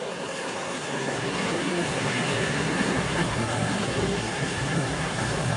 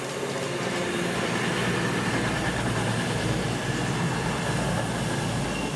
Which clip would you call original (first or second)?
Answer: second